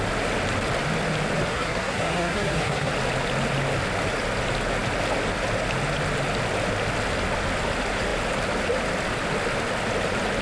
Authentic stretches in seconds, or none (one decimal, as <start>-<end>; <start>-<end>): 0.0-1.5; 2.9-10.4